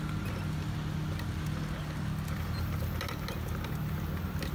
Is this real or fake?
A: real